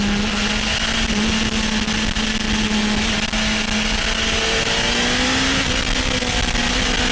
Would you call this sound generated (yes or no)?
no